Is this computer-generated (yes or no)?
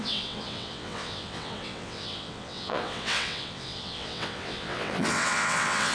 yes